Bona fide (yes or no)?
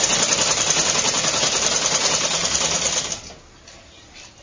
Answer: yes